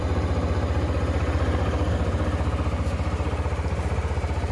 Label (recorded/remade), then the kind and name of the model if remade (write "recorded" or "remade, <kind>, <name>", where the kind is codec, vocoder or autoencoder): recorded